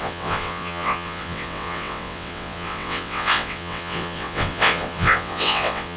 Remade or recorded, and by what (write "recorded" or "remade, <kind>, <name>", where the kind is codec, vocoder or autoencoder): remade, vocoder, WaveNeXt